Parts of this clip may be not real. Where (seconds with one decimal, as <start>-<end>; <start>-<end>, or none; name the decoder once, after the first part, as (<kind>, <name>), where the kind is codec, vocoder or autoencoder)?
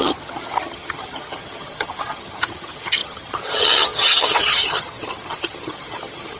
0.0-6.4 (vocoder, HiFi-GAN)